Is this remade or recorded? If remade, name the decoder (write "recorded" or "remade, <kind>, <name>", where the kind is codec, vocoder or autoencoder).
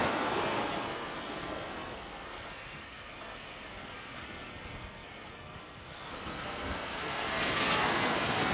remade, codec, SNAC